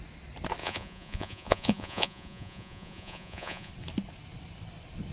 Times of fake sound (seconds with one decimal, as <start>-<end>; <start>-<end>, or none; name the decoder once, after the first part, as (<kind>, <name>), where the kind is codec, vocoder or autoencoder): 0.6-3.7 (vocoder, Vocos)